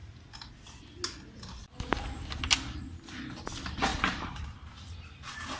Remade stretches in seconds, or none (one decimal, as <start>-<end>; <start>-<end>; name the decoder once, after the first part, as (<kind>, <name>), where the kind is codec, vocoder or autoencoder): 3.9-5.6 (vocoder, BigVGAN v2)